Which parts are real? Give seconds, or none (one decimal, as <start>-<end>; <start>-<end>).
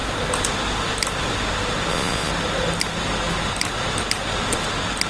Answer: 0.0-1.9; 2.3-5.1